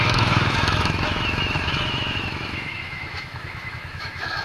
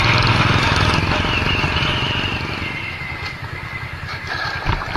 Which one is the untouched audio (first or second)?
second